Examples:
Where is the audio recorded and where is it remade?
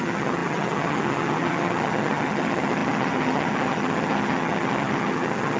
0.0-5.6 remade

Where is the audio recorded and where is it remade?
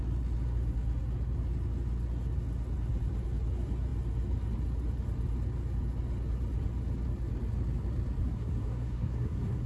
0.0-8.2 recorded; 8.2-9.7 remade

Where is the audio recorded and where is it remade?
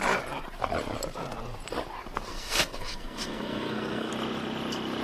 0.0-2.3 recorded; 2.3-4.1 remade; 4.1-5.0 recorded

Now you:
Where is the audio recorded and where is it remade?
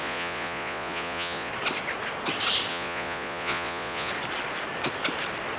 0.0-1.5 remade; 1.5-2.7 recorded; 2.7-4.1 remade; 4.1-5.6 recorded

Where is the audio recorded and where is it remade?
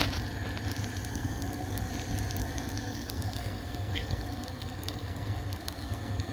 0.0-1.1 recorded; 1.1-1.9 remade; 1.9-2.4 recorded; 2.4-6.3 remade